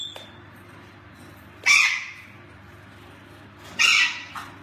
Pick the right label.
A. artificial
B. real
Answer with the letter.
B